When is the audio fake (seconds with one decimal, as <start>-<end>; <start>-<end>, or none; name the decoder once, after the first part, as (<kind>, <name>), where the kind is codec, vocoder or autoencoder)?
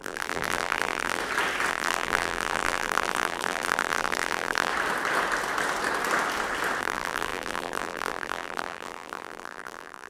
0.0-1.2 (vocoder, BigVGAN v2); 1.7-4.7; 6.8-10.1